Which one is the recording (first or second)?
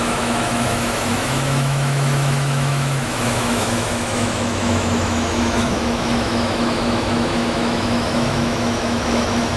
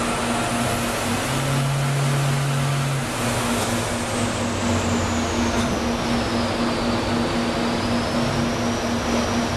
second